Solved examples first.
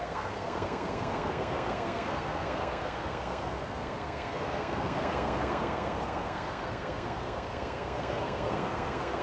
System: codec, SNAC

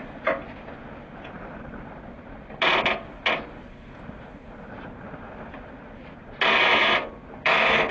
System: none